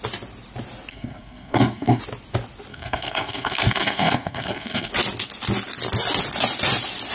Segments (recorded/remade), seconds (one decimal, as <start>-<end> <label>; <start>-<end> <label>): 0.0-0.9 recorded; 0.9-2.0 remade; 2.0-2.7 recorded; 2.7-4.9 remade; 4.9-7.1 recorded